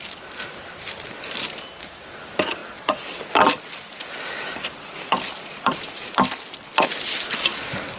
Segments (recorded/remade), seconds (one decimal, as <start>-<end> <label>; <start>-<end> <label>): 0.0-2.6 recorded; 2.6-3.2 remade; 3.2-8.0 recorded